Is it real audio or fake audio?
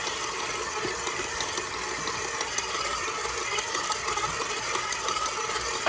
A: real